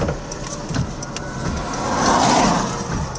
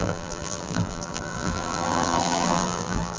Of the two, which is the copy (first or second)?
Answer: second